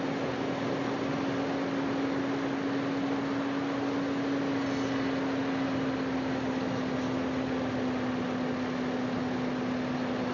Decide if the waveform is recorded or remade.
recorded